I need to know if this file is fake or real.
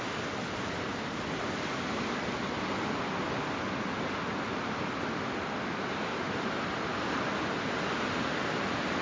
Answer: real